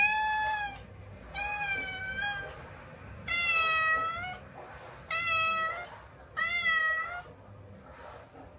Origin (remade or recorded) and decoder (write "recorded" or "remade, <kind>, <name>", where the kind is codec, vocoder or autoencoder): recorded